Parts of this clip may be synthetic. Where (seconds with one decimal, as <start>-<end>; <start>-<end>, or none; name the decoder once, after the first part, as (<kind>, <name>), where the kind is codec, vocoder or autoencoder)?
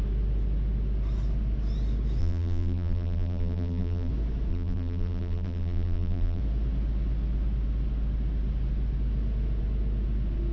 2.2-4.1 (vocoder, BigVGAN v2); 4.5-6.4